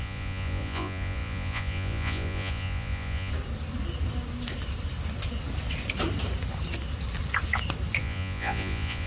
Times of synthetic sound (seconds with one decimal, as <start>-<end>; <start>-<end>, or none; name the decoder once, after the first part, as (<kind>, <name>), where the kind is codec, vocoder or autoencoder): 0.0-3.3 (vocoder, Vocos); 8.0-9.1